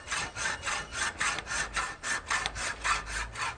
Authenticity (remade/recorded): recorded